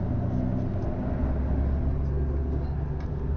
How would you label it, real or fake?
real